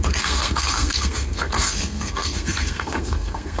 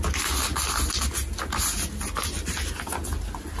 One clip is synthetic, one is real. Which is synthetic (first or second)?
first